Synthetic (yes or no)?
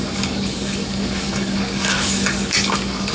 yes